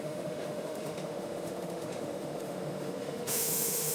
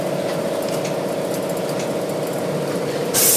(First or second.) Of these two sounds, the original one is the second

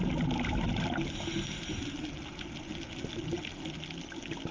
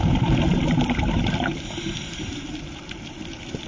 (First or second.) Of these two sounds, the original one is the first